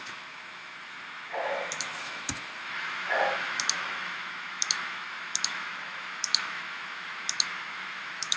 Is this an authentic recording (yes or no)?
no